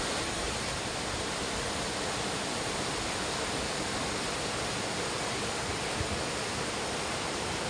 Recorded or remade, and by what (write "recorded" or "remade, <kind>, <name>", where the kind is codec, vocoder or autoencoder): recorded